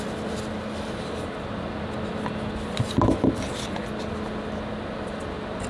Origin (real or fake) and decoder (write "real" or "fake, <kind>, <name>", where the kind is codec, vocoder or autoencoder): real